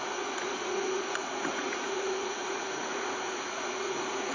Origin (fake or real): fake